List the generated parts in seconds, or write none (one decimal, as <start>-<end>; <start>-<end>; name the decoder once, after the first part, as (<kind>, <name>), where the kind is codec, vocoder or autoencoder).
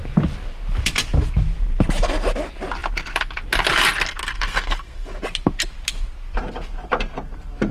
4.2-5.2 (codec, SNAC)